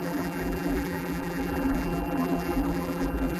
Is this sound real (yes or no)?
no